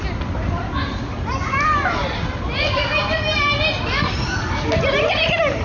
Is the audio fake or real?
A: real